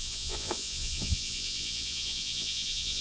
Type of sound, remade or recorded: remade